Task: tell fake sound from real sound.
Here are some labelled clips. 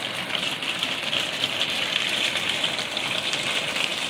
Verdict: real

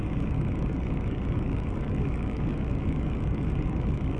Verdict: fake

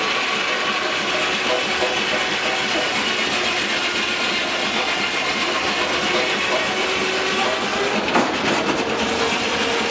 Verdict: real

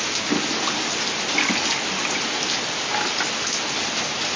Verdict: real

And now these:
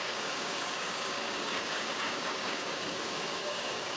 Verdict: fake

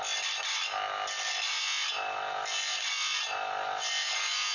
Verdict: real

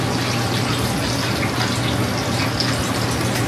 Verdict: real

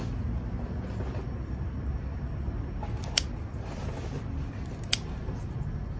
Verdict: real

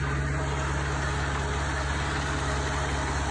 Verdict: real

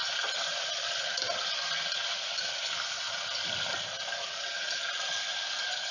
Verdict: real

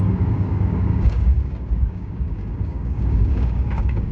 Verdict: fake